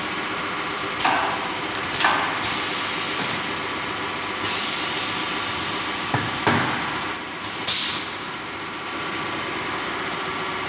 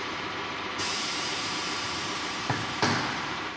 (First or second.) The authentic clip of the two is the first